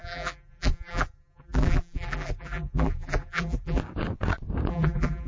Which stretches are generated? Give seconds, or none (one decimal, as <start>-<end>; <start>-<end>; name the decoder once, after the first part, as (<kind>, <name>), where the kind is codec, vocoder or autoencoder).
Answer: 0.0-3.8 (vocoder, BigVGAN v2); 4.7-5.3